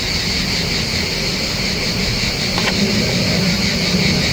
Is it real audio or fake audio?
real